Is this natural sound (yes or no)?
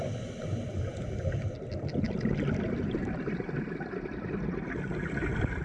yes